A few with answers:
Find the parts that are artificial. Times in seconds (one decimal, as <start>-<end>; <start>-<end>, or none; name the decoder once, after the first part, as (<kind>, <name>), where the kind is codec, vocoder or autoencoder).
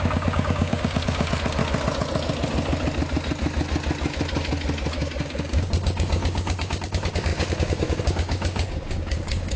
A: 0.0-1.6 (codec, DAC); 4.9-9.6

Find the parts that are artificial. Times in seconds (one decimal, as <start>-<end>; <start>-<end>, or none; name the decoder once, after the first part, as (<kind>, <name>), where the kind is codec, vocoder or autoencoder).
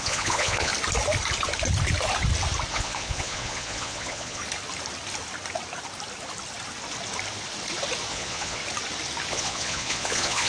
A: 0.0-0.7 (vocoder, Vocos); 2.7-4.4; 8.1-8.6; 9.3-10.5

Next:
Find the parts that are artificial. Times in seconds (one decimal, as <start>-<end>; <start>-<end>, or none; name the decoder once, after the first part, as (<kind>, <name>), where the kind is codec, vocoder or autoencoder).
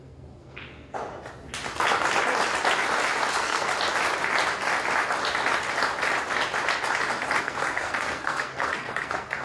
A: 0.0-1.1 (codec, SNAC); 3.3-3.7; 7.4-9.4